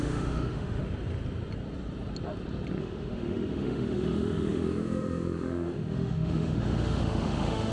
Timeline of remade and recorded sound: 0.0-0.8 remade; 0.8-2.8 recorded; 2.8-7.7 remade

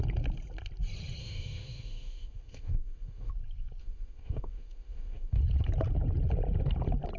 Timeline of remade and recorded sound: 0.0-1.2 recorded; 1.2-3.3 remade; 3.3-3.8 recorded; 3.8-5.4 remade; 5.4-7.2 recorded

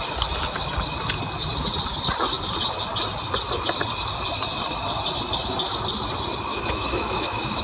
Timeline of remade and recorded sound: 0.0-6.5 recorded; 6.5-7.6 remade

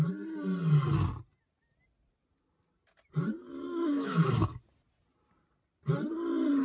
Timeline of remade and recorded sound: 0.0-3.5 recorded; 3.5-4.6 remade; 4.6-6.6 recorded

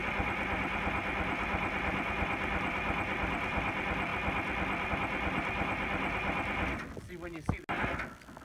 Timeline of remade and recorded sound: 0.0-8.4 recorded

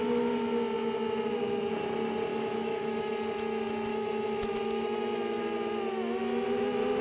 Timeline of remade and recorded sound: 0.0-2.3 recorded; 2.3-3.1 remade; 3.1-3.9 recorded; 3.9-5.4 remade; 5.4-7.0 recorded

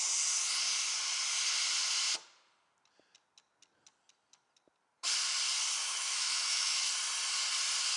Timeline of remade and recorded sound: 0.0-5.8 recorded; 5.8-6.9 remade; 6.9-8.0 recorded

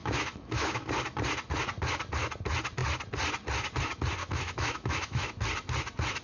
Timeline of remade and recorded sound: 0.0-0.9 remade; 0.9-4.2 recorded; 4.2-5.3 remade; 5.3-6.2 recorded